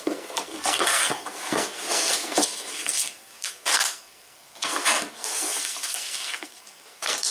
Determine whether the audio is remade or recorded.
remade